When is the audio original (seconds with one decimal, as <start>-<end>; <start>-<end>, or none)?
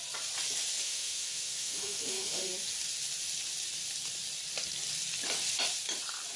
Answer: 0.0-0.8; 2.5-6.4